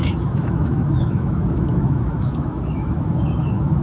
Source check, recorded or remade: remade